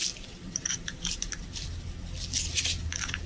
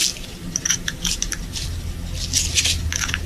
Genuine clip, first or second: second